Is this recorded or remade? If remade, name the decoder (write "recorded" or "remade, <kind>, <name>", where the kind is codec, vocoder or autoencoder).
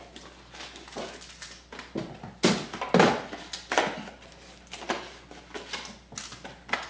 recorded